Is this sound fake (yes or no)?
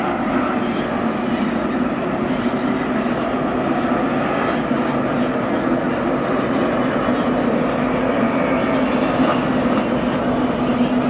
no